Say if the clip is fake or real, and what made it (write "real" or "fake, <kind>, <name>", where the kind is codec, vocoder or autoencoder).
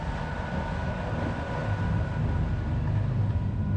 real